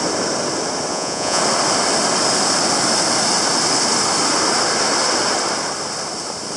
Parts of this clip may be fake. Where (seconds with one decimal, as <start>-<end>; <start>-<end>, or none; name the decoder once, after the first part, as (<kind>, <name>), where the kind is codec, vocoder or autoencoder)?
0.9-1.4 (vocoder, Vocos)